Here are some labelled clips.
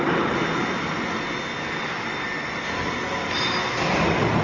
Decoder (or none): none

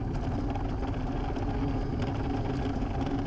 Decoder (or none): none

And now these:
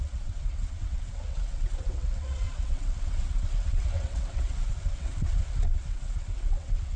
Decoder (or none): vocoder, WaveNeXt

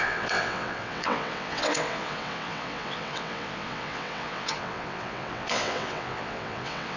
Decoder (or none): vocoder, WaveNeXt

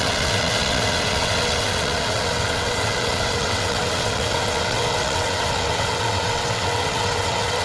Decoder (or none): vocoder, WaveNeXt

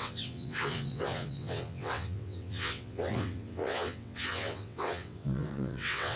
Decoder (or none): vocoder, WaveNeXt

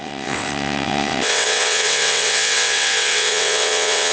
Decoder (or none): vocoder, WaveNeXt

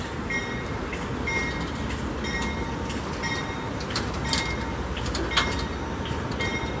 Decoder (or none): none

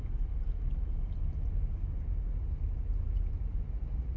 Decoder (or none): none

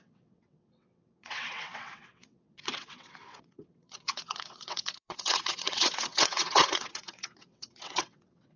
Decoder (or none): vocoder, WaveNeXt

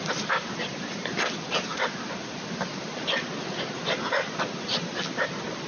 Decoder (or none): none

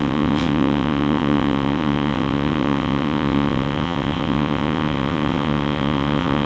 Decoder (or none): vocoder, WaveNeXt